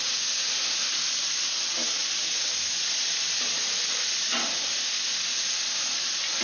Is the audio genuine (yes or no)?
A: yes